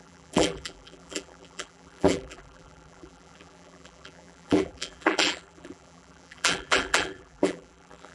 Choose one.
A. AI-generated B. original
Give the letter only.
A